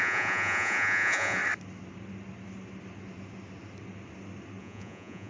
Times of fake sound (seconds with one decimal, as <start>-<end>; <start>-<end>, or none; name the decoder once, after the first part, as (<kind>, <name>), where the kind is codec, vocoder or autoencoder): 0.0-1.4 (vocoder, Vocos); 4.6-5.3